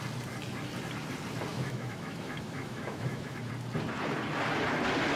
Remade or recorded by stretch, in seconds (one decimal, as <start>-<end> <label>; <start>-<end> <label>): 0.0-1.5 recorded; 1.5-3.5 remade; 3.5-5.2 recorded